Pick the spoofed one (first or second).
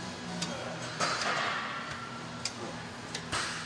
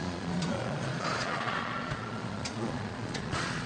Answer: second